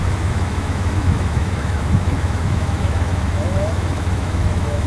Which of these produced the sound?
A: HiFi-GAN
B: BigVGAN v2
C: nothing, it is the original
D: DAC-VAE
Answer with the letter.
D